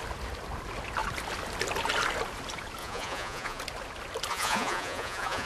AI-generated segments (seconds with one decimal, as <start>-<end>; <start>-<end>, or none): 2.8-3.6; 4.3-5.5